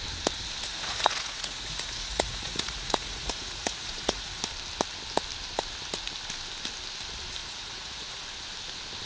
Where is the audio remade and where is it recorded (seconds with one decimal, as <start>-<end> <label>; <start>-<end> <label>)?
0.0-0.7 recorded; 0.7-4.4 remade; 4.4-7.4 recorded; 7.4-8.2 remade; 8.2-9.1 recorded